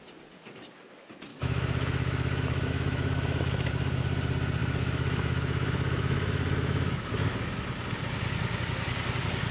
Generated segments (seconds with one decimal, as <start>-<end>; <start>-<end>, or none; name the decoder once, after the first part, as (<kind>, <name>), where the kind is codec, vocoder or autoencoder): 1.3-3.7 (autoencoder, DAC-VAE); 4.6-7.5